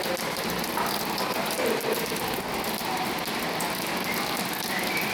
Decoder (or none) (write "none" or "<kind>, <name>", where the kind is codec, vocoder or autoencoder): none